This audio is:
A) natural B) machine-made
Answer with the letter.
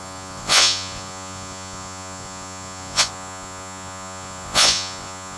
B